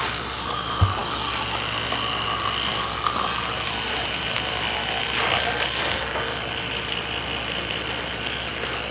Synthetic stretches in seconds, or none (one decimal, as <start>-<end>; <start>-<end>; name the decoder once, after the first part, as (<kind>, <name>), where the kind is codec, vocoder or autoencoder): none